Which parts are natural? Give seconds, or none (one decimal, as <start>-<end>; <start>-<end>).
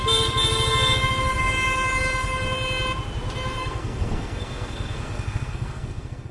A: 0.0-3.6